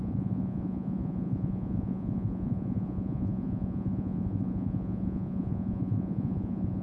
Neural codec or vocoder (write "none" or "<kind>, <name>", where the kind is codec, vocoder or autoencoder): vocoder, Vocos